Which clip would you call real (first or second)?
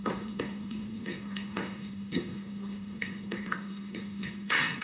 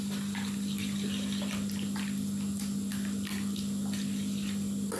second